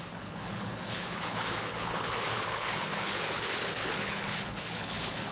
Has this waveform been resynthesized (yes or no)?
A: yes